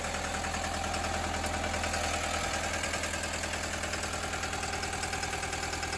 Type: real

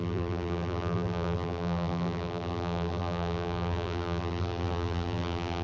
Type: fake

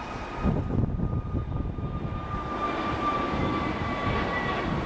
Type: real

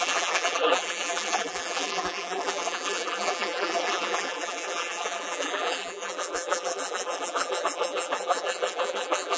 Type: fake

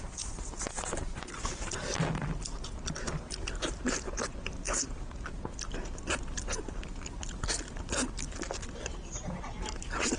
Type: real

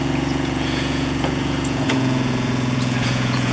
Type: fake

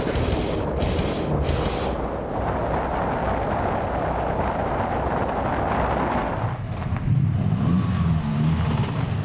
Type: real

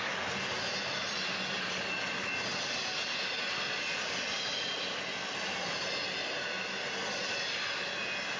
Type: real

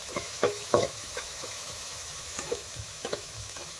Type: fake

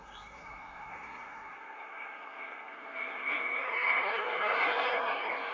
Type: fake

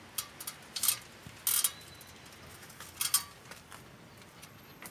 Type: real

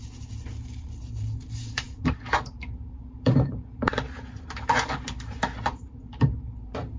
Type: fake